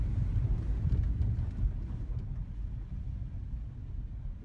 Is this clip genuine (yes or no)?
yes